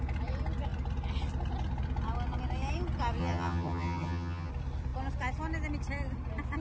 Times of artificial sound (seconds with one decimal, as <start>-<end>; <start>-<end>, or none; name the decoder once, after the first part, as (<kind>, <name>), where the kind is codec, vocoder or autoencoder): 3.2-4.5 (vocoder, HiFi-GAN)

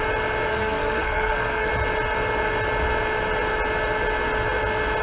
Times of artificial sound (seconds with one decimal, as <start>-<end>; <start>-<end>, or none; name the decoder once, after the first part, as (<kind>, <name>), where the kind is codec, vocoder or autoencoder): 0.5-1.7 (codec, SNAC)

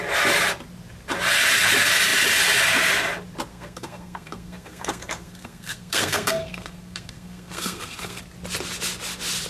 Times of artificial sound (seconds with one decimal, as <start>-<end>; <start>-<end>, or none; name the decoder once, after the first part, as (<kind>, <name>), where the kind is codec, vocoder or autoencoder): 3.5-8.2 (codec, SNAC)

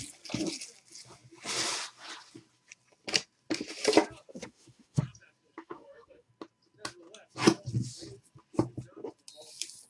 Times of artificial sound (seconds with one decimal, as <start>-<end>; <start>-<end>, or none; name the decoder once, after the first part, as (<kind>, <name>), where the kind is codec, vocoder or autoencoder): 4.3-5.0 (autoencoder, DAC-VAE); 5.6-6.3